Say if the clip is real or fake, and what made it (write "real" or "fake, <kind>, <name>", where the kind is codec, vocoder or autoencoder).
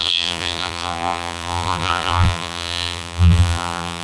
fake, vocoder, BigVGAN v2